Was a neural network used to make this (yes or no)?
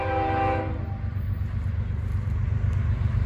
no